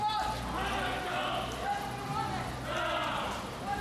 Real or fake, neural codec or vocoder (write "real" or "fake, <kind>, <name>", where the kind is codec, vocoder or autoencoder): real